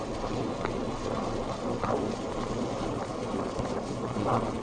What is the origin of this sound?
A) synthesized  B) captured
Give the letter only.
B